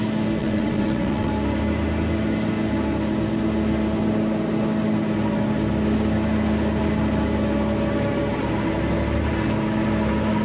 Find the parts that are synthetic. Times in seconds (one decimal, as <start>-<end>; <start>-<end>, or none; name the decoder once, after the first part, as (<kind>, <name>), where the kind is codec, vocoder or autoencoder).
0.4-1.3 (vocoder, WaveNeXt)